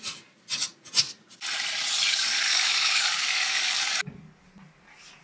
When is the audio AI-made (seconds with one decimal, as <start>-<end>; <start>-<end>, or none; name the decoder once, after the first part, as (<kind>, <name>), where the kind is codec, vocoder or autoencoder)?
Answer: 2.1-4.5 (codec, DAC)